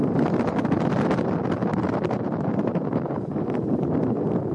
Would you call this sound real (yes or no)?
yes